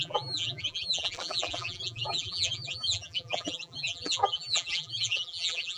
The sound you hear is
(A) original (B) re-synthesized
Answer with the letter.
B